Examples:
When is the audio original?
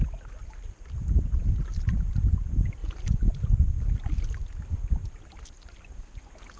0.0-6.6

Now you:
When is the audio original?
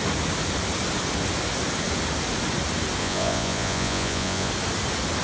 0.0-3.0; 4.5-5.2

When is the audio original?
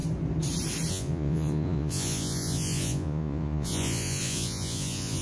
0.0-0.9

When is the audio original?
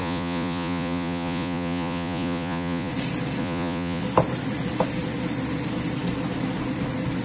2.9-3.4; 4.0-7.2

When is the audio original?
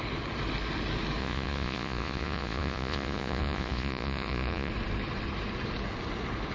0.0-1.2; 4.7-6.5